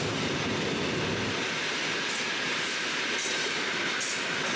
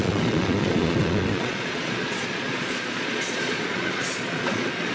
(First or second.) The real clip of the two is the first